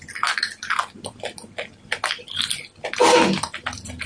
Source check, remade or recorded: recorded